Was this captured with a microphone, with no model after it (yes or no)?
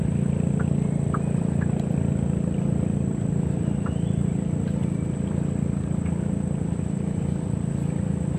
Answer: yes